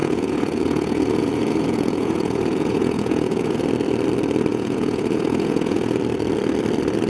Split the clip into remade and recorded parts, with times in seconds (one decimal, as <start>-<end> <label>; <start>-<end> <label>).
0.0-3.6 remade; 3.6-4.5 recorded; 4.5-6.0 remade; 6.0-7.1 recorded